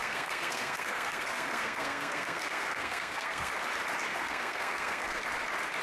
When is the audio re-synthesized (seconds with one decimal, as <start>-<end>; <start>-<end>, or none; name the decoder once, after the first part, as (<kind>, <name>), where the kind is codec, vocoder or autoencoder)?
0.0-3.5 (codec, SNAC); 4.1-5.2

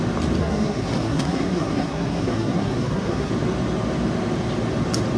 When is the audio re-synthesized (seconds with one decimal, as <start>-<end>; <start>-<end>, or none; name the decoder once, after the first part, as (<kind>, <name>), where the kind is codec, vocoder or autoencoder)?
0.4-3.3 (codec, SNAC)

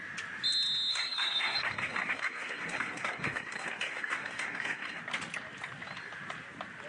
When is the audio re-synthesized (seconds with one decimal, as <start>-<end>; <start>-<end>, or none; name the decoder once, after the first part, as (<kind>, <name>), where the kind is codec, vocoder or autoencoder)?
0.9-5.0 (codec, SNAC)

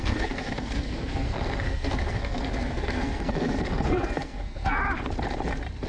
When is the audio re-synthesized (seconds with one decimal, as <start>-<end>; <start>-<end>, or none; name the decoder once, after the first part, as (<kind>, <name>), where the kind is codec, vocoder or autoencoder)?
0.0-4.8 (codec, SNAC)

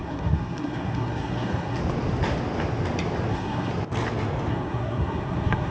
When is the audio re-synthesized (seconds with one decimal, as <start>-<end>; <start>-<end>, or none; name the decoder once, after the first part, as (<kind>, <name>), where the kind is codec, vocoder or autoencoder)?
0.0-1.8 (codec, SNAC); 3.3-3.7; 4.5-5.7